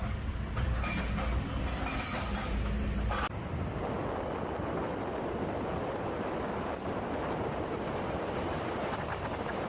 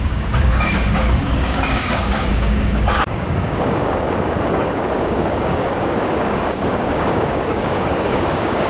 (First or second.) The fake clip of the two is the second